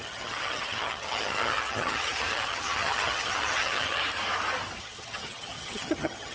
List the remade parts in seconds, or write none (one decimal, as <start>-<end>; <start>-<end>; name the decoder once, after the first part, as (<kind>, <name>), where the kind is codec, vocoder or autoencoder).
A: 0.0-4.0 (vocoder, HiFi-GAN); 4.8-6.3